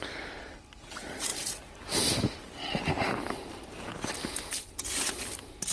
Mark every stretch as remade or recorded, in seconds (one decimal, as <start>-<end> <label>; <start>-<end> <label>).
0.0-5.7 recorded